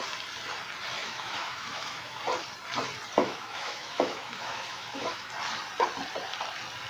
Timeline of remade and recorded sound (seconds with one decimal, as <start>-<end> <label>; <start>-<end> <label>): 0.0-1.0 recorded; 1.0-2.2 remade; 2.2-3.2 recorded; 3.2-5.3 remade; 5.3-6.9 recorded